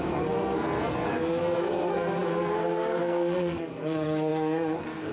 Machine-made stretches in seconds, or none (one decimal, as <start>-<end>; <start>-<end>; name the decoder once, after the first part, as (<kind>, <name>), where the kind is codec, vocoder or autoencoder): 0.0-5.1 (codec, SNAC)